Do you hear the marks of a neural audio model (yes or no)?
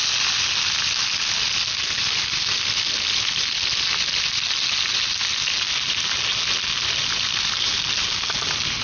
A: no